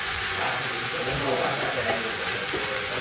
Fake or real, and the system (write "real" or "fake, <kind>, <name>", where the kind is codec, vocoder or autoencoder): fake, vocoder, Vocos